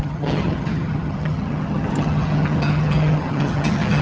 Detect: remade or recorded remade